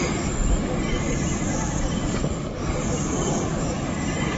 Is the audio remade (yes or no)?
no